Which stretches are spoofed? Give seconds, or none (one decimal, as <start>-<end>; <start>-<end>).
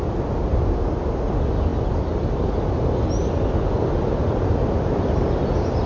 none